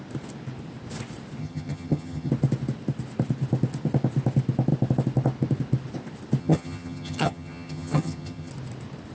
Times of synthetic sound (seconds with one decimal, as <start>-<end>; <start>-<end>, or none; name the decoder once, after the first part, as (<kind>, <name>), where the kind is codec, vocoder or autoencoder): 1.4-2.3 (vocoder, HiFi-GAN); 6.4-8.5